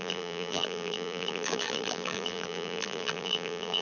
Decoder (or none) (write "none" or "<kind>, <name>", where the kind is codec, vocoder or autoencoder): vocoder, BigVGAN v2